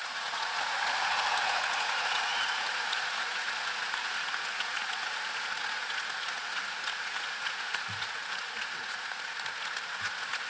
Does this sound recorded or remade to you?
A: remade